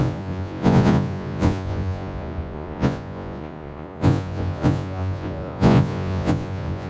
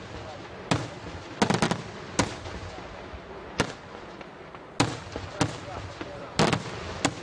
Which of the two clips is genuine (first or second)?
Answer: second